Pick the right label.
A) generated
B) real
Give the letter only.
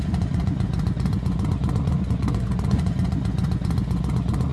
A